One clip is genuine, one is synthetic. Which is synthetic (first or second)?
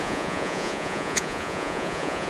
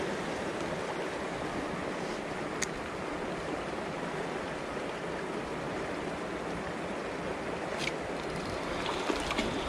first